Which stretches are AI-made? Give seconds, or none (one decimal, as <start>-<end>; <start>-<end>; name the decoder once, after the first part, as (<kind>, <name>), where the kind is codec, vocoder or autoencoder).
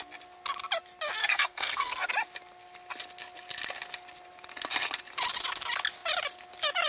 1.2-2.1 (codec, SNAC)